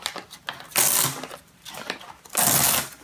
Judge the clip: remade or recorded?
recorded